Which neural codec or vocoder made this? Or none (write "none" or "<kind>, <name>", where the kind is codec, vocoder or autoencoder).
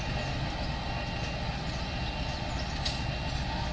none